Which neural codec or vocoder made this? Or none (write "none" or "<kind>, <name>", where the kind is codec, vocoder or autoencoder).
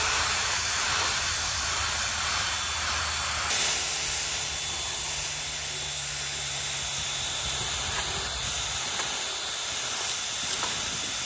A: none